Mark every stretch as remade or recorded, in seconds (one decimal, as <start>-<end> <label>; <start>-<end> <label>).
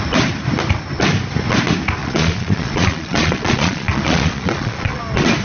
0.0-2.0 recorded; 2.0-5.0 remade; 5.0-5.4 recorded